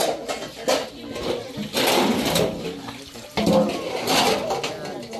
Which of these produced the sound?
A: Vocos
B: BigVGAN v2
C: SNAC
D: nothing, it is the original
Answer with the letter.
D